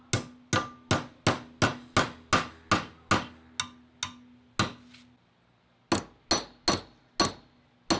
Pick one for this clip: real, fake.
real